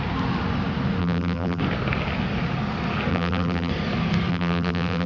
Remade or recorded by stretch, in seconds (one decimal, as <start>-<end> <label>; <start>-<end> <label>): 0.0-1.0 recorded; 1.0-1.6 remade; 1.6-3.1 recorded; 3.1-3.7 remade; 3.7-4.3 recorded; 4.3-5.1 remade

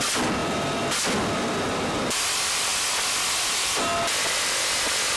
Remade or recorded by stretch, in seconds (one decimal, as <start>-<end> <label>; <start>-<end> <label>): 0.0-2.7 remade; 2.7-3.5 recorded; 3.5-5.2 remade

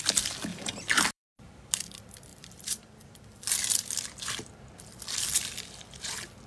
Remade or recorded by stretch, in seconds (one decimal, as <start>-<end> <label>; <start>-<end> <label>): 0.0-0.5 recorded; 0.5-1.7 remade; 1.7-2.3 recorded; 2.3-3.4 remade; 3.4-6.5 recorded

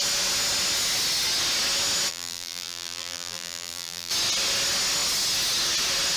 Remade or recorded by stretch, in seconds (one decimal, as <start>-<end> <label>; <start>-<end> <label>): 0.0-2.1 recorded; 2.1-4.1 remade; 4.1-6.2 recorded

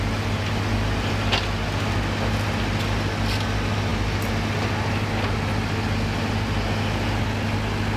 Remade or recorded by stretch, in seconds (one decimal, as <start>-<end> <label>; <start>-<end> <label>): 0.0-8.0 recorded

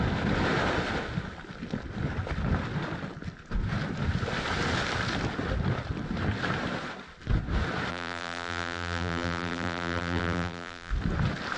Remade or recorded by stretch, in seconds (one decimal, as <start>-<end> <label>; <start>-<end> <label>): 0.0-7.9 recorded; 7.9-10.9 remade; 10.9-11.6 recorded

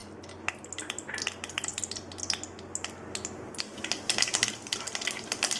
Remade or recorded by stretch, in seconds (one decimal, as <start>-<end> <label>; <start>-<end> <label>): 0.0-5.6 recorded